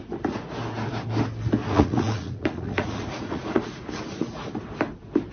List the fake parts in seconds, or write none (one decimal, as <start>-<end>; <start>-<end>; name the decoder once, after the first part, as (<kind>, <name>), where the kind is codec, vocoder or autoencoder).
1.6-4.5 (vocoder, Vocos)